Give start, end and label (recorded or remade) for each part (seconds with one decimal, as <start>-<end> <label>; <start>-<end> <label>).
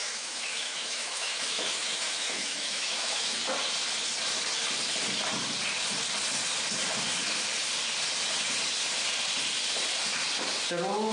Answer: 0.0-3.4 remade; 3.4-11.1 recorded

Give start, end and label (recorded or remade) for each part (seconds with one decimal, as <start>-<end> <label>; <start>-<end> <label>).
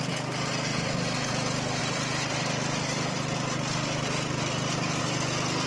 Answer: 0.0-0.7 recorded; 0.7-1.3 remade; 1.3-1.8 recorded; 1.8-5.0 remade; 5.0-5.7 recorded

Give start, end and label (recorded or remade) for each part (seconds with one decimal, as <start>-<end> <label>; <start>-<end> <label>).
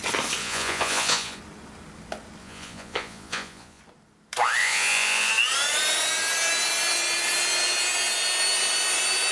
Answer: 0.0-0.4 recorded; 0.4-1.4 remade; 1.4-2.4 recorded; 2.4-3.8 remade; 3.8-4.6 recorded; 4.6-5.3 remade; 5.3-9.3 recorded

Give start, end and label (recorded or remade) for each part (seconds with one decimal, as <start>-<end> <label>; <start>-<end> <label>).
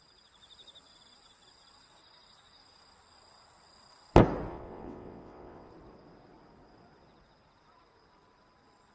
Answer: 0.0-4.5 recorded; 4.5-5.7 remade; 5.7-8.9 recorded